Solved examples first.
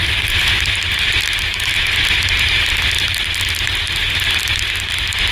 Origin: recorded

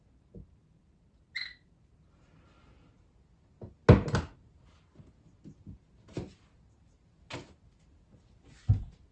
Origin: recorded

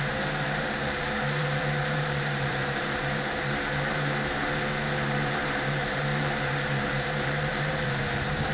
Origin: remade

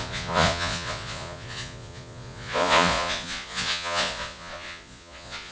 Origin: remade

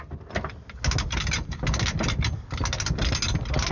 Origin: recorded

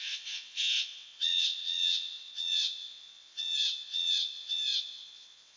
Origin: remade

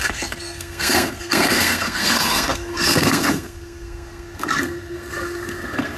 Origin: remade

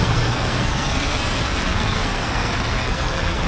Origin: remade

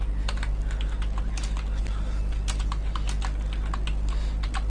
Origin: recorded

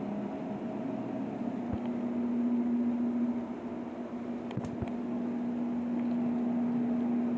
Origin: recorded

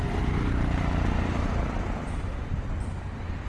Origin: recorded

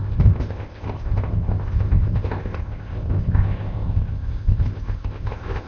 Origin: remade